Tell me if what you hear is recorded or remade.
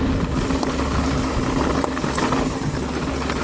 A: recorded